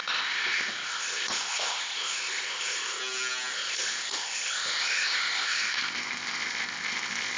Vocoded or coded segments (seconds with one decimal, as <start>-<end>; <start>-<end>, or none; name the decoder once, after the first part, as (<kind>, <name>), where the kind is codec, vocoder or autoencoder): 0.0-3.0 (codec, ZipCodec); 3.5-7.4